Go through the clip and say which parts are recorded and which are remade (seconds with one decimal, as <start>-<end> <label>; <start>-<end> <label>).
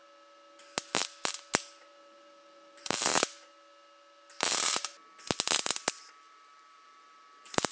0.0-1.8 recorded; 1.8-3.1 remade; 3.1-5.9 recorded; 5.9-7.7 remade